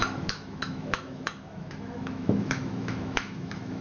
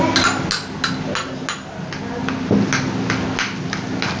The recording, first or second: second